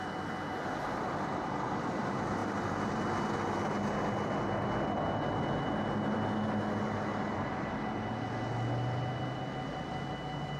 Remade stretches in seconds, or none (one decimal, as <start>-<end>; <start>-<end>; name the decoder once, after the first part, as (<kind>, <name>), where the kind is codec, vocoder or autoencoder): none